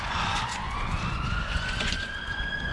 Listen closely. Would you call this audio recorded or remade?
remade